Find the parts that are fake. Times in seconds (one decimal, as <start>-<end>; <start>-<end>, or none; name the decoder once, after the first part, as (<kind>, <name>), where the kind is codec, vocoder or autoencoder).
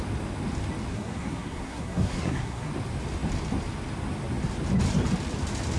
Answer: 0.9-2.7 (codec, SNAC)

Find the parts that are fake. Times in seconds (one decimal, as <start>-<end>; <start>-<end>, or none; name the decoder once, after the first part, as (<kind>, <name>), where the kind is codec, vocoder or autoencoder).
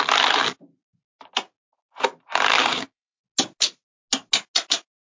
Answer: 2.6-3.2 (codec, DAC)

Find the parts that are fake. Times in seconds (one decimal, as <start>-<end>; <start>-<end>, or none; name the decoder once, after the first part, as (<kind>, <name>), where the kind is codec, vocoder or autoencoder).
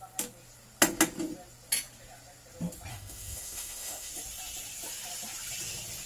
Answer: 2.9-4.1 (autoencoder, DAC-VAE)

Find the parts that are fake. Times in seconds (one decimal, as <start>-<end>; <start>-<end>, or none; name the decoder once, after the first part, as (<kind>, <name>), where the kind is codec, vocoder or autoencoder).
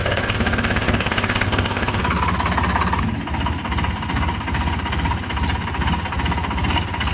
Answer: 0.0-2.0 (codec, ZipCodec)